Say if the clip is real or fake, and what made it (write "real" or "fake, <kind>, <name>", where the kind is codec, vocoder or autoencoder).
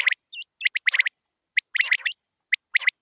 real